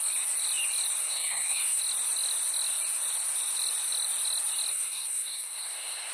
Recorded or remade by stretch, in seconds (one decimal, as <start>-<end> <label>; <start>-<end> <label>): 0.0-1.0 recorded; 1.0-1.8 remade; 1.8-4.7 recorded; 4.7-6.1 remade